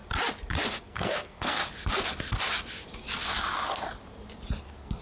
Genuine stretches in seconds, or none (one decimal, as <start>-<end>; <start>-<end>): 0.0-0.8; 1.6-4.6